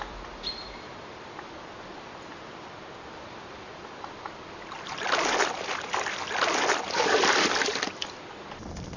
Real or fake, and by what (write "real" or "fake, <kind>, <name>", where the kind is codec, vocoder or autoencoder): real